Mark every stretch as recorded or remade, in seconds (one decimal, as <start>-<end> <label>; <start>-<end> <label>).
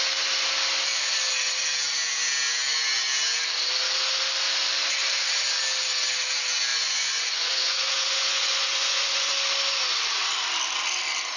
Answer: 0.0-6.7 recorded; 6.7-9.3 remade; 9.3-11.4 recorded